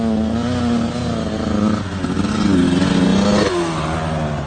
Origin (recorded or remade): recorded